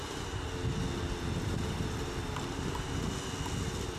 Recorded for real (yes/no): yes